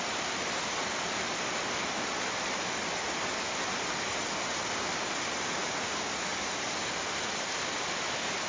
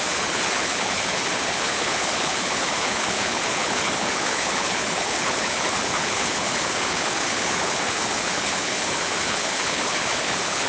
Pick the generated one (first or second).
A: second